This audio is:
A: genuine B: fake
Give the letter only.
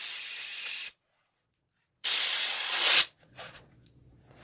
B